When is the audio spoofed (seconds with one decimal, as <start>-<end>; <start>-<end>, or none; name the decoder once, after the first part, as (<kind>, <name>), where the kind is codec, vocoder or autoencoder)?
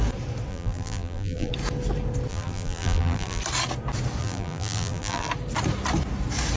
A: 0.5-1.5 (vocoder, BigVGAN v2); 2.3-3.4; 4.2-5.3